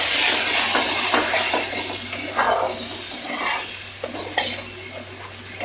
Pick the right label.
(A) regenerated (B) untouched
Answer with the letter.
B